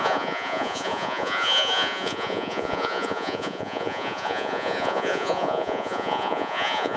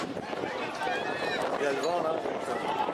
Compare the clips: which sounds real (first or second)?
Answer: second